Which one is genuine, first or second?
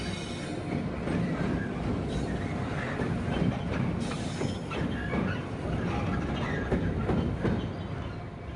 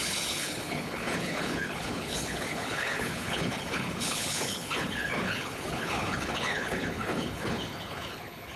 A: first